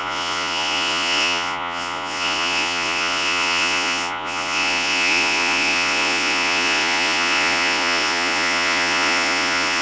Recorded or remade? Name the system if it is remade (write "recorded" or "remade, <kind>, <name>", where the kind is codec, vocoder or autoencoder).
remade, vocoder, Vocos